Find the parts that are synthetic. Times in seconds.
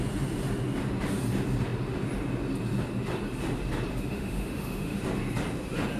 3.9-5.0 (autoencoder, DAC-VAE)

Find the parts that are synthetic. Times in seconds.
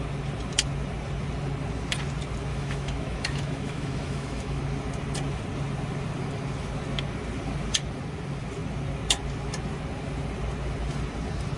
2.5-4.6 (autoencoder, DAC-VAE)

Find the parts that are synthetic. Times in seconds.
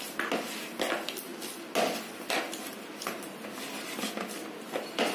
none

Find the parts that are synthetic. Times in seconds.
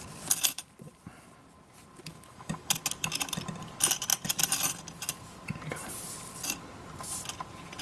2.1-2.8 (autoencoder, DAC-VAE)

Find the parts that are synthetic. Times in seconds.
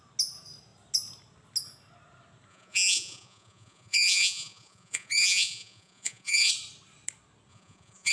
2.5-6.5 (vocoder, Vocos); 7.5-8.1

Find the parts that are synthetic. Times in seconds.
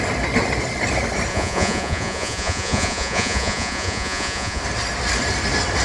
1.3-4.6 (vocoder, Vocos)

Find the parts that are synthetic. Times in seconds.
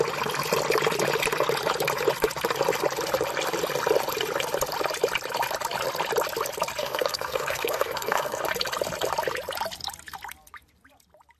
6.8-8.4 (codec, SNAC)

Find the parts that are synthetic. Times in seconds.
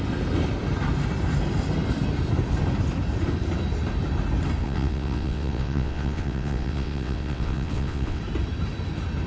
4.6-8.2 (vocoder, WaveNeXt)